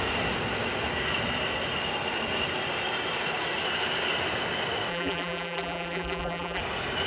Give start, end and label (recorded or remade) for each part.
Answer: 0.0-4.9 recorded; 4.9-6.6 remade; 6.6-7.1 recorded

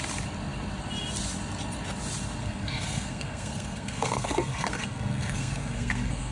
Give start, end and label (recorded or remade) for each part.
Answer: 0.0-2.4 recorded; 2.4-6.3 remade